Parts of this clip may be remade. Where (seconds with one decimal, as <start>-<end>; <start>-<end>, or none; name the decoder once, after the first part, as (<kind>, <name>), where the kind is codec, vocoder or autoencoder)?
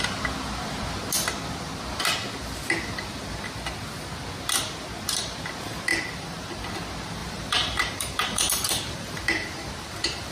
5.9-6.7 (vocoder, BigVGAN v2); 7.2-10.3